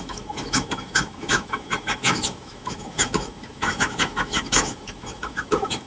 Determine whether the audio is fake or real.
fake